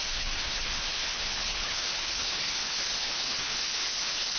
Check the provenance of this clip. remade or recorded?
remade